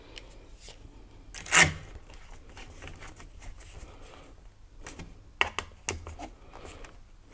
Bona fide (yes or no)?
yes